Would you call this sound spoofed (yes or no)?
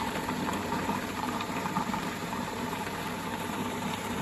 yes